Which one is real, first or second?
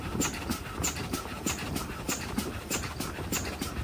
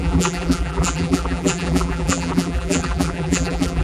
first